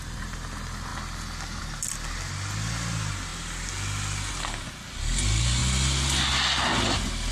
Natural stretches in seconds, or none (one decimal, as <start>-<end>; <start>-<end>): 0.0-7.3